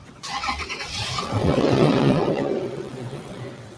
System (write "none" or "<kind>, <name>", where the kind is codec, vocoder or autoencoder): vocoder, WaveNeXt